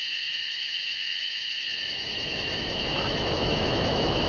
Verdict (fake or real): fake